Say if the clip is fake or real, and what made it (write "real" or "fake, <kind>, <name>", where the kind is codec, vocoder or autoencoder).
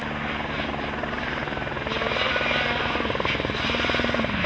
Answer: real